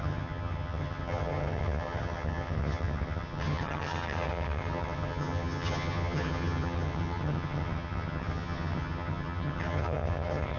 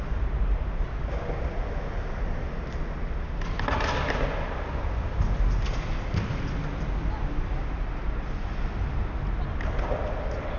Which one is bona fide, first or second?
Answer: second